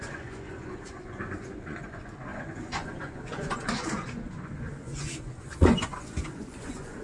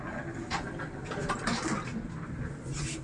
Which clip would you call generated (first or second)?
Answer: first